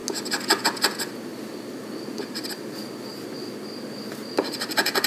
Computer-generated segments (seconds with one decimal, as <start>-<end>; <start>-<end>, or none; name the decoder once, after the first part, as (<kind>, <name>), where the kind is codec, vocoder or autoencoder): none